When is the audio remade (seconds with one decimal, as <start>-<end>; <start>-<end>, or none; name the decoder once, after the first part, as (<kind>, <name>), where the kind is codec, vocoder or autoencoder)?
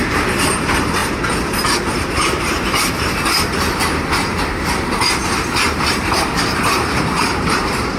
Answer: 0.0-1.0 (vocoder, BigVGAN v2); 1.9-8.0